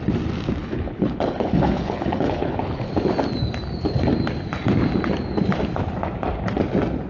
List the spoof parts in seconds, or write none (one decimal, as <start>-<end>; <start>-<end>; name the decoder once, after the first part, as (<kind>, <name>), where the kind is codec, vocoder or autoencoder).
0.6-2.9 (codec, HILCodec)